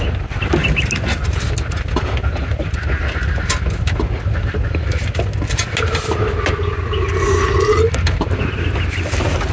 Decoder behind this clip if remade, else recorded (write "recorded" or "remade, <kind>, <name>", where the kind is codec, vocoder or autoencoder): recorded